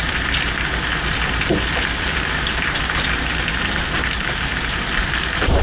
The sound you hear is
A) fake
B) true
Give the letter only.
A